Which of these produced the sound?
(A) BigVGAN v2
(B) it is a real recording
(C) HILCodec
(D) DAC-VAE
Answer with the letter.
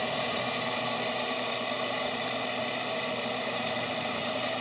A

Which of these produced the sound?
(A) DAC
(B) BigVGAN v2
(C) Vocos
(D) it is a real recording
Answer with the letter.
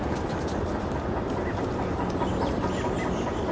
D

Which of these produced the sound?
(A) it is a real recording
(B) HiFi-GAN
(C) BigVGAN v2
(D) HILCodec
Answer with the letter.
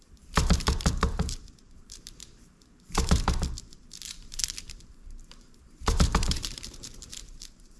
C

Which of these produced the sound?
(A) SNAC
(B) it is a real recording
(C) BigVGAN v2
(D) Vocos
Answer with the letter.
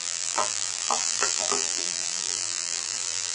C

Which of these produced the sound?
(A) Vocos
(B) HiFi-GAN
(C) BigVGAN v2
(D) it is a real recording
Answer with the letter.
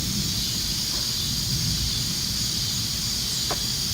D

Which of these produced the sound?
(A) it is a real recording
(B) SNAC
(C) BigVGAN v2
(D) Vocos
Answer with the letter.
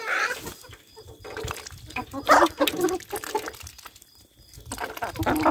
A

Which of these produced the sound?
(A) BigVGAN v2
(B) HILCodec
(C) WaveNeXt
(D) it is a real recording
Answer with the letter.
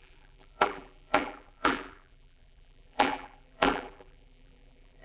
A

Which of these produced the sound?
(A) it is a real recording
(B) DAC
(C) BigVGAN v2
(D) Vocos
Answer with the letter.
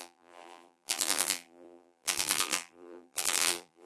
C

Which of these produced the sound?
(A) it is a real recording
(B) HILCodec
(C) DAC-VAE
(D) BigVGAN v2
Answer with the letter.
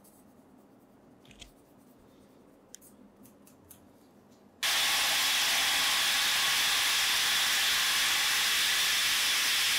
A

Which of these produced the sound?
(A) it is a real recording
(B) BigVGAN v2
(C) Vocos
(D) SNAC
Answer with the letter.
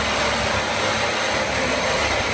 A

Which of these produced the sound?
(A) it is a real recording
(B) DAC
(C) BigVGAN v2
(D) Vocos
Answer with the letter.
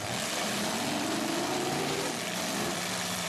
C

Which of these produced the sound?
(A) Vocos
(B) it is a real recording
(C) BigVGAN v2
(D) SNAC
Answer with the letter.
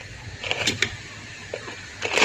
C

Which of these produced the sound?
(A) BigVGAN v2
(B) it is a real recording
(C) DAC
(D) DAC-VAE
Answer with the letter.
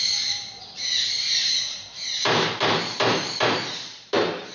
A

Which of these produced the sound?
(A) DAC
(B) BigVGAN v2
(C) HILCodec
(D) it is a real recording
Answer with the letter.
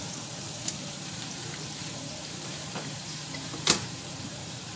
B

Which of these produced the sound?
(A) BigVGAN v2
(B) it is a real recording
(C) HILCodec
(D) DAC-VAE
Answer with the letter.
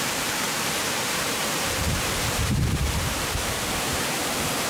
A